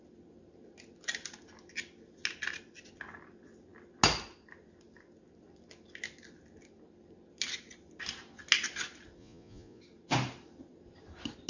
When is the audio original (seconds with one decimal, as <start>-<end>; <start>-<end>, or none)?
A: 0.0-9.2; 9.8-11.5